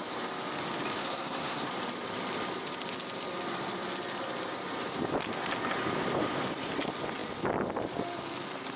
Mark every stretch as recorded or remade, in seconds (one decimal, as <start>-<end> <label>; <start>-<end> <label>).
0.0-1.0 recorded; 1.0-1.7 remade; 1.7-8.8 recorded

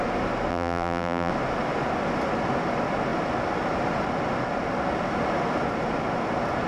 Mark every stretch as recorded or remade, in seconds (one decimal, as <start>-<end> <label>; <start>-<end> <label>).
0.0-0.5 recorded; 0.5-1.3 remade; 1.3-6.7 recorded

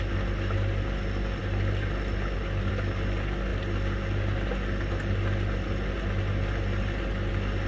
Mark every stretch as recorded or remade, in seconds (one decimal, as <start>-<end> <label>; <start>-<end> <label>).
0.0-7.7 recorded

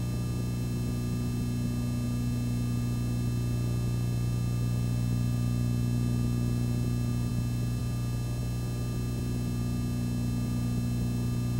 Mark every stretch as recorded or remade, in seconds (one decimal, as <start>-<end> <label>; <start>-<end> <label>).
0.0-11.6 recorded

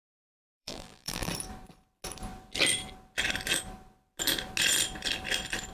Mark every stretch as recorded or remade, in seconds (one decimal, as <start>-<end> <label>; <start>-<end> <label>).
0.0-0.4 recorded; 0.4-1.3 remade; 1.3-5.7 recorded